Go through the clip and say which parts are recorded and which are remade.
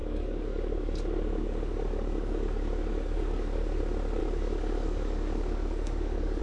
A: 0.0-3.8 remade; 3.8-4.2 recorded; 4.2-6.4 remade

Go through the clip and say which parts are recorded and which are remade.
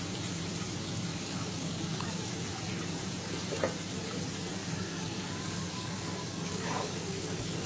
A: 0.0-1.1 recorded; 1.1-2.2 remade; 2.2-4.6 recorded; 4.6-7.7 remade